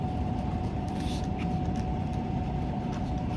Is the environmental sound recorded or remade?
remade